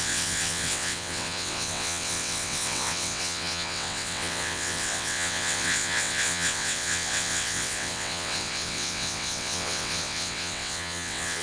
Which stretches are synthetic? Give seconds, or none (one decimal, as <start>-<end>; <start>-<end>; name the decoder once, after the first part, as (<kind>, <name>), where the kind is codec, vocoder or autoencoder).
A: 0.0-11.4 (vocoder, WaveNeXt)